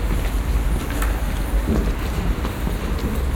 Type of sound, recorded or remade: recorded